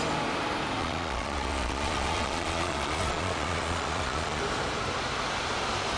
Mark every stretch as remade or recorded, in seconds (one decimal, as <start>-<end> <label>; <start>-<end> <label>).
0.0-0.8 recorded; 0.8-4.4 remade; 4.4-6.0 recorded